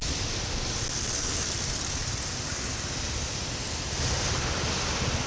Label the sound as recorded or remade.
recorded